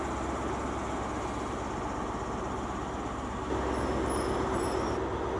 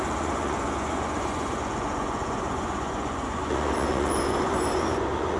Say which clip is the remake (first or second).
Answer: second